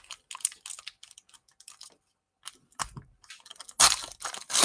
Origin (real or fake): real